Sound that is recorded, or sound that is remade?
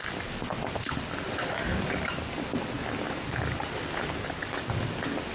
recorded